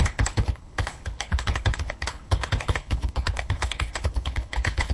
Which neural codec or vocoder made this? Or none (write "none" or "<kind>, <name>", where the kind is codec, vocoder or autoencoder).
codec, HILCodec